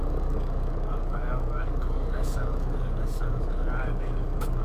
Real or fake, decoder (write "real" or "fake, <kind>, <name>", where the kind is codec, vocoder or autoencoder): fake, codec, DAC